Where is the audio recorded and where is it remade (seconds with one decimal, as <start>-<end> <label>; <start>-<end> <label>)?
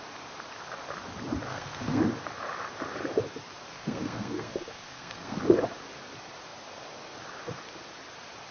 0.0-1.5 recorded; 1.5-2.0 remade; 2.0-3.7 recorded; 3.7-5.4 remade; 5.4-8.5 recorded